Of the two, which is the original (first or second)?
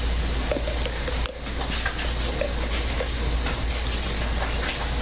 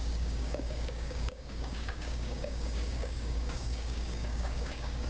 first